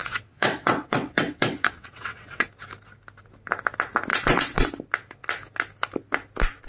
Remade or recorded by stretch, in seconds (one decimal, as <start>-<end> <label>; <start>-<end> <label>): 0.0-2.5 remade; 2.5-4.1 recorded; 4.1-4.7 remade; 4.7-6.7 recorded